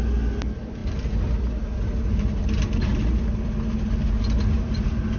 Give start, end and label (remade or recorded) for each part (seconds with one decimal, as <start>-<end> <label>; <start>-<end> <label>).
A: 0.0-5.2 recorded